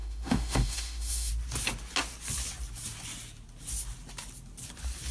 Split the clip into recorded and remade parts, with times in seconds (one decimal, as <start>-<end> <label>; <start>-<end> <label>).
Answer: 0.0-1.3 remade; 1.3-5.1 recorded